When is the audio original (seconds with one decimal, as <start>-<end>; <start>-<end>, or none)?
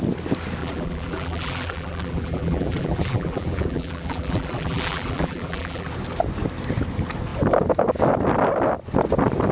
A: 0.0-0.6; 5.9-9.5